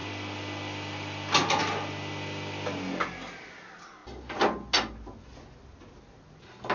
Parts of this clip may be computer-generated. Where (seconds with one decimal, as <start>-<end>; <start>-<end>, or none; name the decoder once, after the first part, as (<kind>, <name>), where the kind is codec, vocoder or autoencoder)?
none